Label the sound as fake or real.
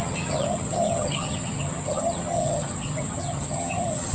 fake